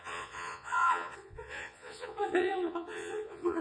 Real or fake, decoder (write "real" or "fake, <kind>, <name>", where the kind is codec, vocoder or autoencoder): fake, vocoder, Vocos